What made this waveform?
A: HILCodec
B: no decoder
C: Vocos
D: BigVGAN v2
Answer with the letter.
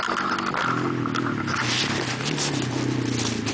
B